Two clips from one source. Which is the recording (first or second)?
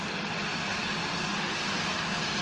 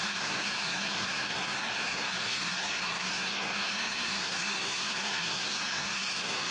first